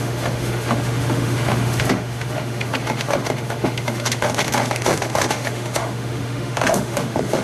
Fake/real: fake